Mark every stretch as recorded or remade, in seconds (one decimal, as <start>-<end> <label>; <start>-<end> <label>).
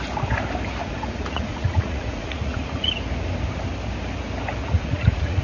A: 0.0-0.8 recorded; 0.8-2.9 remade; 2.9-4.6 recorded; 4.6-5.4 remade